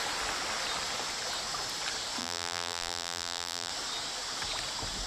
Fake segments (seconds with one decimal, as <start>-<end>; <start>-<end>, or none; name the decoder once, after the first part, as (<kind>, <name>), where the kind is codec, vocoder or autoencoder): 2.2-3.7 (vocoder, BigVGAN v2)